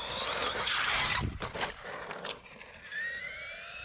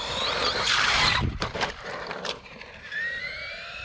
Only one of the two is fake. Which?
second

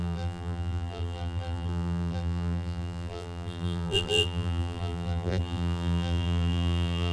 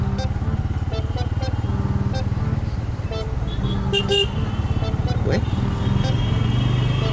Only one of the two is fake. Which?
first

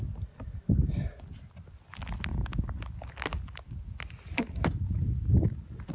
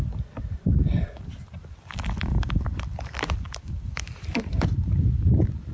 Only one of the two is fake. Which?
second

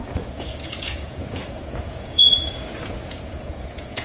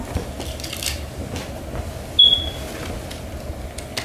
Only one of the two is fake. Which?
first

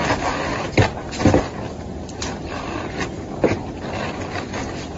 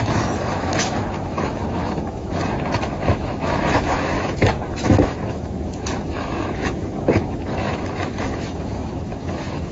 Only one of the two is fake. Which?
second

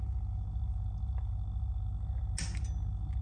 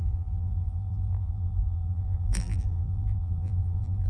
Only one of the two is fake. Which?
second